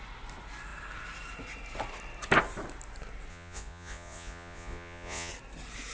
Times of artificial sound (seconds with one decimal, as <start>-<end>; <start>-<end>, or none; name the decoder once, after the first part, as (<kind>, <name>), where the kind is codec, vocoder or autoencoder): 3.3-5.3 (vocoder, Vocos)